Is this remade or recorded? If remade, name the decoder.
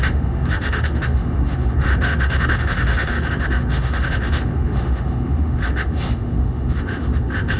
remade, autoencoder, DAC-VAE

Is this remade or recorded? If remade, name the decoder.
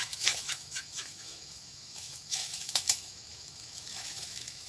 remade, autoencoder, DAC-VAE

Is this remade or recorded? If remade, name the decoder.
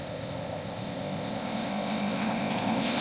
remade, codec, ZipCodec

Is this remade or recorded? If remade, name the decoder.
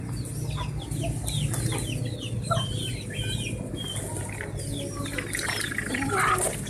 recorded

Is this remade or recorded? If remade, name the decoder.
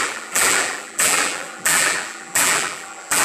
remade, vocoder, BigVGAN v2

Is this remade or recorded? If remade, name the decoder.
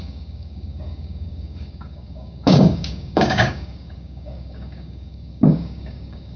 remade, codec, DAC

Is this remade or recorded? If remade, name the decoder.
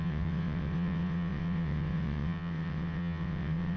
remade, vocoder, WaveNeXt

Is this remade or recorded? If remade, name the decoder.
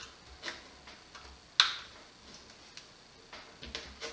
recorded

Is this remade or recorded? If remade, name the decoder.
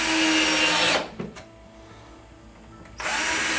recorded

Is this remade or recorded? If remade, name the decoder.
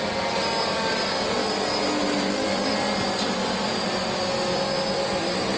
recorded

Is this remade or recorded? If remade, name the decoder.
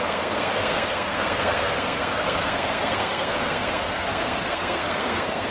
remade, codec, SNAC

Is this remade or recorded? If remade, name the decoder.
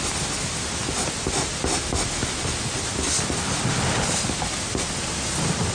recorded